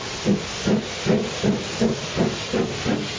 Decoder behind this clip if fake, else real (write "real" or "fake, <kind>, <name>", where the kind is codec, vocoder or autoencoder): real